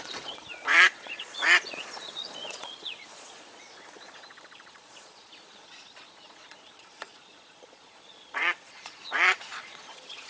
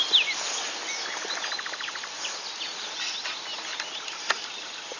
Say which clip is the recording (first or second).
second